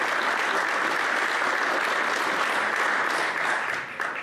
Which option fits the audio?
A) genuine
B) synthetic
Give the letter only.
A